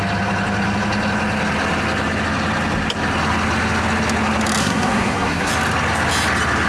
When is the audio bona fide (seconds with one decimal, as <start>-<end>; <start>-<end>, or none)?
0.0-4.6; 5.5-6.7